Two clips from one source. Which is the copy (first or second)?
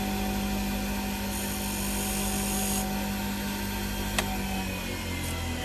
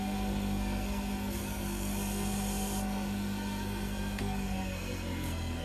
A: second